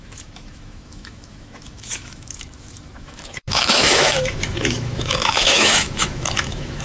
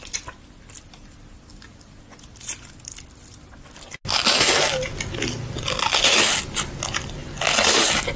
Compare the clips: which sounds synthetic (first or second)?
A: first